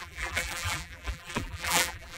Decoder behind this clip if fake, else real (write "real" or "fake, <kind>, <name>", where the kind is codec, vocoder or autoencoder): fake, vocoder, BigVGAN v2